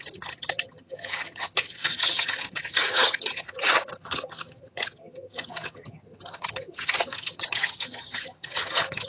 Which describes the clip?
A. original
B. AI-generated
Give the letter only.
B